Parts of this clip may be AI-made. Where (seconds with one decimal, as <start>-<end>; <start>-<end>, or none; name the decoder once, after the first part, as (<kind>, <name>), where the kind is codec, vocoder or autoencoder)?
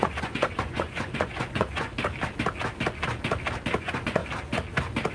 0.0-1.9 (vocoder, Vocos); 3.8-4.2